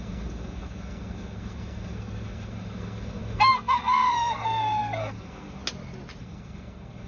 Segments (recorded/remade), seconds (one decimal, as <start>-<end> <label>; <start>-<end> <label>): 0.0-5.6 remade; 5.6-6.2 recorded; 6.2-7.1 remade